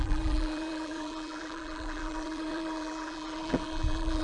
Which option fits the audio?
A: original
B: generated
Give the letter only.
B